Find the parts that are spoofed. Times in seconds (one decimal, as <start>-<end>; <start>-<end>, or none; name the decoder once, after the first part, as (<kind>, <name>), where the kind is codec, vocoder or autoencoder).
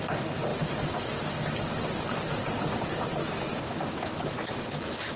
3.2-4.5 (autoencoder, DAC-VAE)